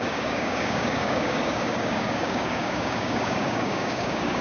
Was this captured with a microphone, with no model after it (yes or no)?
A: no